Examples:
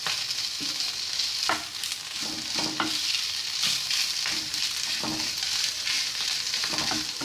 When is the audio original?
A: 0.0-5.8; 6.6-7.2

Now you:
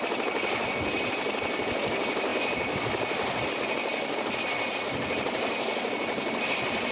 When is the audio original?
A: 0.0-6.9

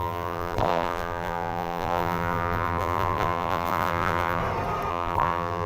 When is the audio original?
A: 4.4-4.9

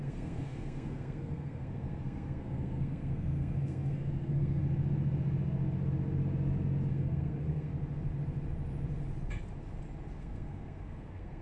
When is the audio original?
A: 4.6-6.9; 7.7-10.2

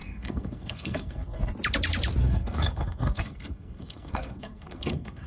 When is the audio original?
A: 1.5-2.2

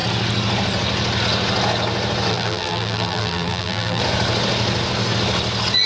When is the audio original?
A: 0.0-2.3; 4.0-5.9

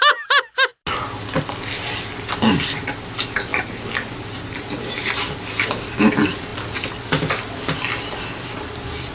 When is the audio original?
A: 0.0-9.1

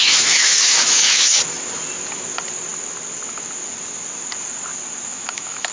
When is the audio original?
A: 1.4-5.1